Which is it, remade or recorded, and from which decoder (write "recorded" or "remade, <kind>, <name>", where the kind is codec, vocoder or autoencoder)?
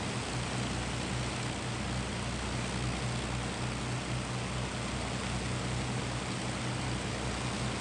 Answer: recorded